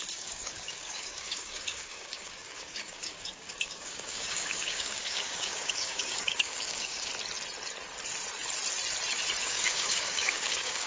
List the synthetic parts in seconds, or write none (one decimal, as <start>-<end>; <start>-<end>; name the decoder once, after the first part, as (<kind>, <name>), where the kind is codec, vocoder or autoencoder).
0.0-7.1 (codec, DAC); 9.4-10.9